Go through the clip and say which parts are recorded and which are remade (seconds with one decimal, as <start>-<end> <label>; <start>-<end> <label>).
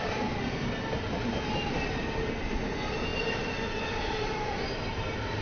0.0-5.4 recorded